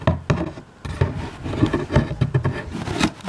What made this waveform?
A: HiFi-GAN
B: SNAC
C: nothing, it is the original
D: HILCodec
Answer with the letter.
C